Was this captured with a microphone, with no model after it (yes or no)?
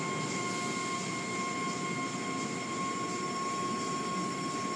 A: yes